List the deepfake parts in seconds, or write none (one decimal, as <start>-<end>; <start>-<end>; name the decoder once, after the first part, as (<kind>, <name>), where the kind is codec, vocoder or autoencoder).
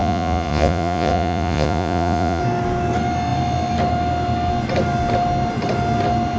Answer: 0.0-2.4 (vocoder, Vocos)